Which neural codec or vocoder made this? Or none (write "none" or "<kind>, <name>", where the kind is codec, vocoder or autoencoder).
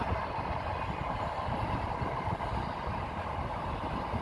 none